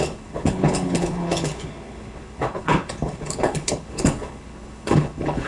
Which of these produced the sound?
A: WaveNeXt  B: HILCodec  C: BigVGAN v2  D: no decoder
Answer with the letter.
B